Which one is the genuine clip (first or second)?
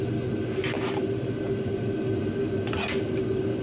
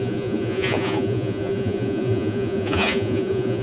first